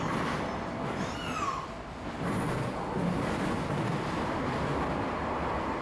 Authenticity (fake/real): real